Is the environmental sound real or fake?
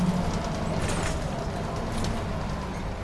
real